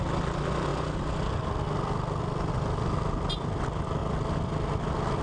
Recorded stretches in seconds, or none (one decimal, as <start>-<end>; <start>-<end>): 0.0-5.2